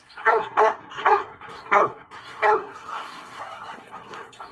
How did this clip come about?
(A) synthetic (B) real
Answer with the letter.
A